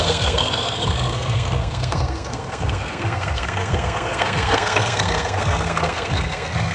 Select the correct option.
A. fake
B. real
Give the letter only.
A